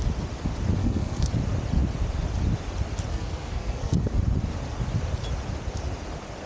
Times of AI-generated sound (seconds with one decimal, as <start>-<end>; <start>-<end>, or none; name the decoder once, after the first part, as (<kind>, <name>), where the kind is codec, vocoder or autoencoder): 0.8-1.3 (codec, SNAC); 3.1-4.2

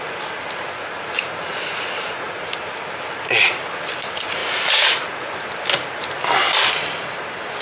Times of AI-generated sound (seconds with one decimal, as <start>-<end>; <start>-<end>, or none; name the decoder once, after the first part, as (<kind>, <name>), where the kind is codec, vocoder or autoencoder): 1.5-2.4 (vocoder, Vocos); 4.4-5.4

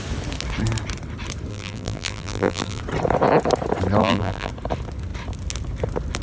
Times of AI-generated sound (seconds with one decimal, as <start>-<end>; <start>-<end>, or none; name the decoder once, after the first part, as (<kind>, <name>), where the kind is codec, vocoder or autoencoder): 1.5-2.8 (vocoder, BigVGAN v2); 4.0-4.5